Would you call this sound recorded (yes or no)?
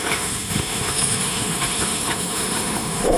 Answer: no